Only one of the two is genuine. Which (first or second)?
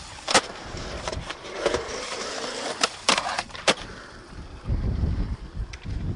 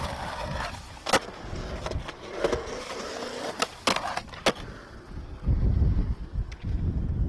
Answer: second